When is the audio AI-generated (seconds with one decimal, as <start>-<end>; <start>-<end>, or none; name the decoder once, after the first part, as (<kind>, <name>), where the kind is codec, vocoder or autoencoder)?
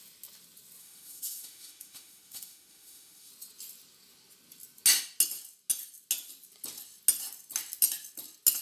0.8-3.3 (autoencoder, DAC-VAE)